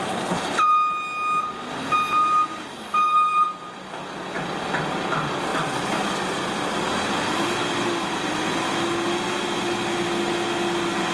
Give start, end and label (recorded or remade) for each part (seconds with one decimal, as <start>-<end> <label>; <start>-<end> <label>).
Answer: 0.0-3.3 recorded; 3.3-3.9 remade; 3.9-11.1 recorded